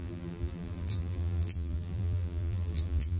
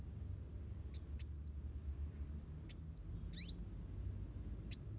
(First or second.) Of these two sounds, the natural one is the second